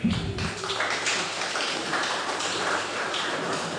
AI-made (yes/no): yes